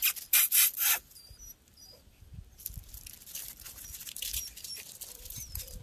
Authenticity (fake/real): fake